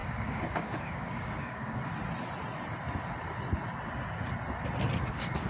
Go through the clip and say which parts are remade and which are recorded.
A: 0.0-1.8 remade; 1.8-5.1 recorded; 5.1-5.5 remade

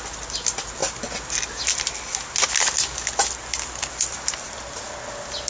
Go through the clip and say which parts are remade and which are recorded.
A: 0.0-5.5 recorded

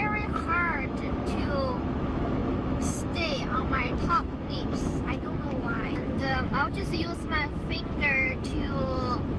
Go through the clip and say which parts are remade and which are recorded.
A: 0.0-9.4 remade

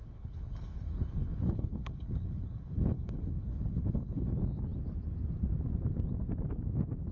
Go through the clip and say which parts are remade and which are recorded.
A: 0.0-4.3 remade; 4.3-7.1 recorded

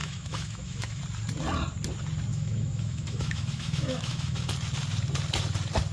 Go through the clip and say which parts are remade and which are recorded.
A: 0.0-1.0 remade; 1.0-2.3 recorded; 2.3-4.5 remade; 4.5-5.9 recorded

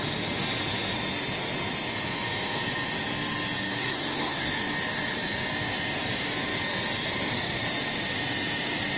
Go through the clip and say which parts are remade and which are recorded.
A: 0.0-3.8 recorded; 3.8-4.5 remade; 4.5-9.0 recorded

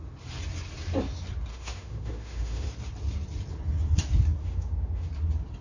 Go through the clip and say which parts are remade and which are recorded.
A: 0.0-1.5 recorded; 1.5-2.7 remade; 2.7-4.4 recorded; 4.4-5.1 remade; 5.1-5.6 recorded

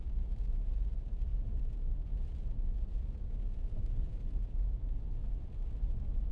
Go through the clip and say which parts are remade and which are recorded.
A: 0.0-5.2 remade; 5.2-6.3 recorded